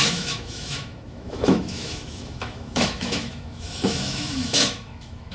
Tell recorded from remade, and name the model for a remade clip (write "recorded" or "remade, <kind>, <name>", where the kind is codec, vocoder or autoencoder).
remade, autoencoder, DAC-VAE